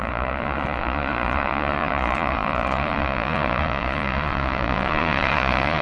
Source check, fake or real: fake